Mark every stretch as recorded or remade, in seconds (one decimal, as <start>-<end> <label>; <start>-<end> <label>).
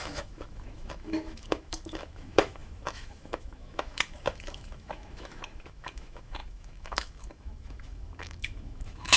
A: 0.0-9.2 remade